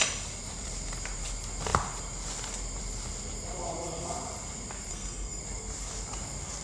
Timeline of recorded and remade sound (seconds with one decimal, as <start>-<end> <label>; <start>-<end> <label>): 0.0-4.9 recorded; 4.9-5.4 remade; 5.4-6.6 recorded